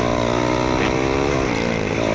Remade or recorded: recorded